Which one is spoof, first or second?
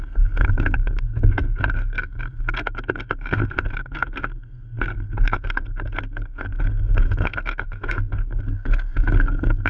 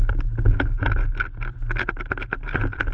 first